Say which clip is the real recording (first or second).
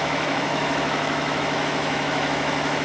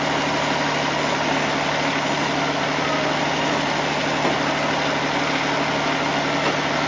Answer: second